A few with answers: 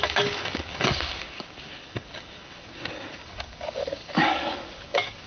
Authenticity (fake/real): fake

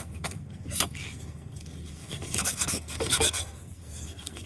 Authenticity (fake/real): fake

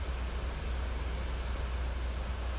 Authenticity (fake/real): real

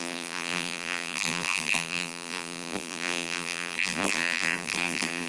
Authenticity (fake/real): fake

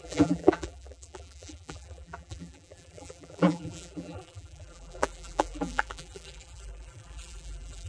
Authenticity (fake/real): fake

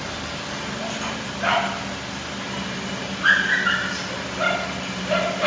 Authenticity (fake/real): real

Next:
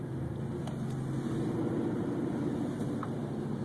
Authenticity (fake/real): real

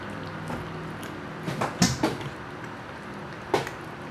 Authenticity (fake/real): real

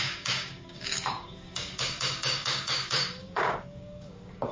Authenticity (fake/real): fake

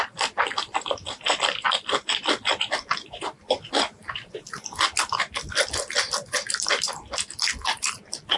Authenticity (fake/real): fake